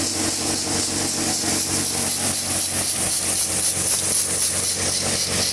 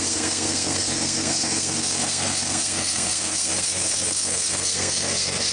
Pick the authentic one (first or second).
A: first